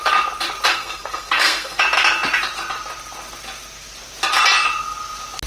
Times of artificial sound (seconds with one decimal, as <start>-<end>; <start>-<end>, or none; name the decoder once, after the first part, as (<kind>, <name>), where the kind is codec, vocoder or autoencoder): 0.7-1.8 (codec, SNAC)